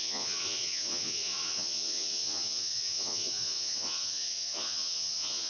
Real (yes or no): no